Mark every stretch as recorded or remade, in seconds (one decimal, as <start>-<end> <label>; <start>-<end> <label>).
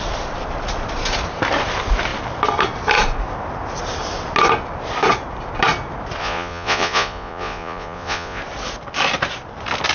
0.0-6.2 recorded; 6.2-8.4 remade; 8.4-9.9 recorded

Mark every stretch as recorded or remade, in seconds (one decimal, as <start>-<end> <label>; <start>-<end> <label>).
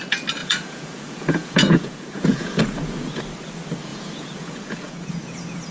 0.0-0.4 recorded; 0.4-3.2 remade; 3.2-3.9 recorded; 3.9-5.7 remade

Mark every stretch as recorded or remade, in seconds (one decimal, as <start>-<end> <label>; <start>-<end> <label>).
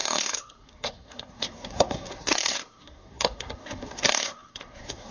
0.0-5.1 remade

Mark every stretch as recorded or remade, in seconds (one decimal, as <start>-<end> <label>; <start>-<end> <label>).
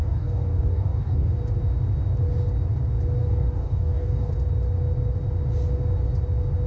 0.0-1.4 remade; 1.4-3.2 recorded; 3.2-4.3 remade; 4.3-6.7 recorded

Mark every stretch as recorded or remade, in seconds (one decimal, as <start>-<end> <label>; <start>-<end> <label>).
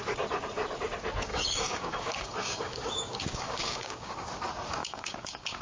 0.0-1.3 recorded; 1.3-4.3 remade; 4.3-4.8 recorded; 4.8-5.6 remade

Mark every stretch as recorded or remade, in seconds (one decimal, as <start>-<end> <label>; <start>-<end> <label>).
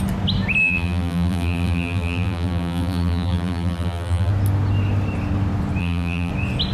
0.0-0.6 recorded; 0.6-4.3 remade; 4.3-5.8 recorded; 5.8-6.3 remade; 6.3-6.7 recorded